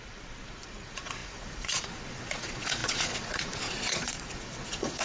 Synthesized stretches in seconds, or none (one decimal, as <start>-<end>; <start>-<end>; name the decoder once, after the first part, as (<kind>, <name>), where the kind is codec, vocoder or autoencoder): 0.0-5.0 (vocoder, Vocos)